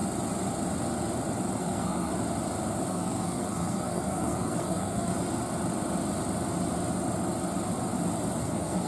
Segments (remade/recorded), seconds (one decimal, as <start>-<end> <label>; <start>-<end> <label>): 0.0-1.6 recorded; 1.6-2.1 remade; 2.1-2.9 recorded; 2.9-5.1 remade; 5.1-8.4 recorded; 8.4-8.9 remade